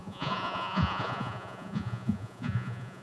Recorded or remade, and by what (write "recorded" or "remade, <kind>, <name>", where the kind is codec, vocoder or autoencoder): remade, vocoder, Vocos